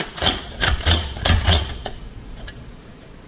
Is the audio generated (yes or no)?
yes